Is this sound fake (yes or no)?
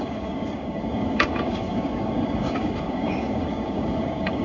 yes